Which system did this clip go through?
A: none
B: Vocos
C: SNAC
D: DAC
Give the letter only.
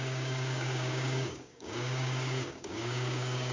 D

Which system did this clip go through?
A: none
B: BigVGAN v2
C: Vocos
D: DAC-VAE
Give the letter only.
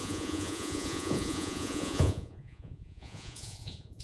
C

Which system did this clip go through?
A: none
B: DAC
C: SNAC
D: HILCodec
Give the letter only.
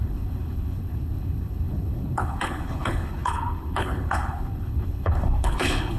D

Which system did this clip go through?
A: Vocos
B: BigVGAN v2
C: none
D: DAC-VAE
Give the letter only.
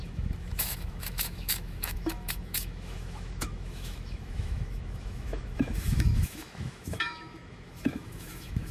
D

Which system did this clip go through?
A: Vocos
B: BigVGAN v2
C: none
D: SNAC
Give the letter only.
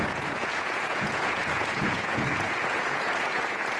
A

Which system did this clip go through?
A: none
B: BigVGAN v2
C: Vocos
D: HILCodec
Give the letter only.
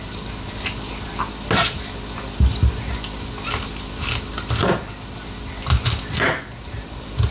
A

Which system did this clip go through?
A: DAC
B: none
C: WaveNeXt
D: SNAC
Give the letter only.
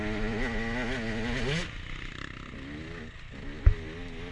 B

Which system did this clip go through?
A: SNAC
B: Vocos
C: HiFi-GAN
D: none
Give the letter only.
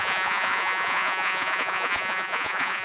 B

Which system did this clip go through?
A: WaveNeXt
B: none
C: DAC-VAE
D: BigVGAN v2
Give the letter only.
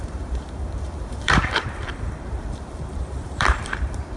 D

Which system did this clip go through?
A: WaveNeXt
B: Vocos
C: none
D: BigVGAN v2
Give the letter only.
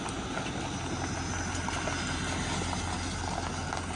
C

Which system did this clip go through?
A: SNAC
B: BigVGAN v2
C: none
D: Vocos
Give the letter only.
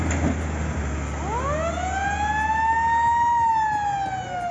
C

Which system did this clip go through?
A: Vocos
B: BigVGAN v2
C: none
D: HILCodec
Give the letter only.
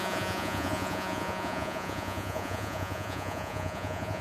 A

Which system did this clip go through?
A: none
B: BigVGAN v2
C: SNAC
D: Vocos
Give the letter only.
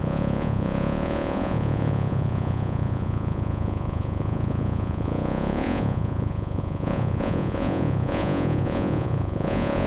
D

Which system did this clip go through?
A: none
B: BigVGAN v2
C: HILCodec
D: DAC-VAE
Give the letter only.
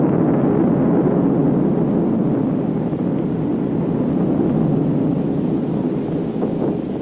A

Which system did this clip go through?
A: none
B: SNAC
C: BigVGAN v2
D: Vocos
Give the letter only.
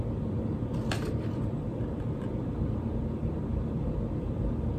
C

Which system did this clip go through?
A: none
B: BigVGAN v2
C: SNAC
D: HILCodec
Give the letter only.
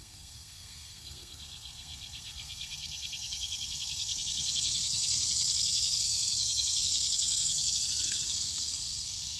C